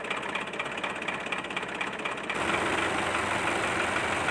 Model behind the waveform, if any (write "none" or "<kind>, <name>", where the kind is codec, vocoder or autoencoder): none